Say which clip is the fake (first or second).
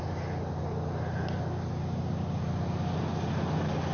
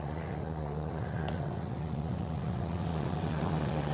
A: second